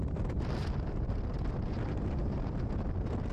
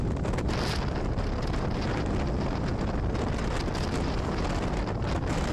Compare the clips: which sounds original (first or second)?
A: second